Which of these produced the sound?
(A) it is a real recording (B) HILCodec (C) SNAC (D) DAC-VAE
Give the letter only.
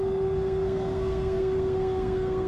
C